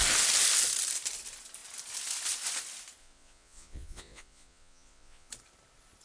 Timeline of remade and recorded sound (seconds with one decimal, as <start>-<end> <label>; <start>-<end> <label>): 0.0-3.0 recorded; 3.0-5.3 remade; 5.3-6.0 recorded